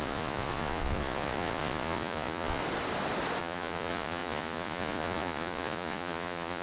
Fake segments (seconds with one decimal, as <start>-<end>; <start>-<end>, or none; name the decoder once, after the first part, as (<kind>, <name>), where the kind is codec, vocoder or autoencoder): 0.0-2.6 (vocoder, Vocos); 3.4-6.6